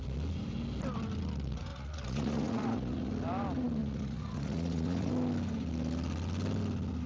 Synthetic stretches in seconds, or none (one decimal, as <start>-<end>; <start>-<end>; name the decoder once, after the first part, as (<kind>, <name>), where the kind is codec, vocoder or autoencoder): 1.7-3.1 (vocoder, Vocos); 3.8-5.1